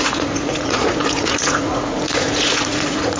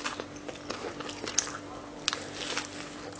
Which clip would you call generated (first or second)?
first